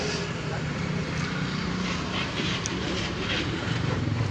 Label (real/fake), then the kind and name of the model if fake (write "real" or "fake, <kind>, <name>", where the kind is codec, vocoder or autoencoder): fake, vocoder, BigVGAN v2